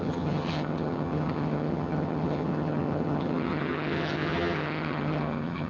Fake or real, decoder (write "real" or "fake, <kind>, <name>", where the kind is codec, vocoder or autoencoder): fake, vocoder, HiFi-GAN